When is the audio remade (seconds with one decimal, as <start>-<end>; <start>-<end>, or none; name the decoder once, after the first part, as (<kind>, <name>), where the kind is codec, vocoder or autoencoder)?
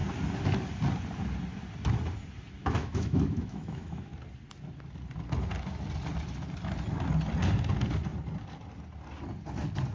2.6-4.1 (autoencoder, DAC-VAE)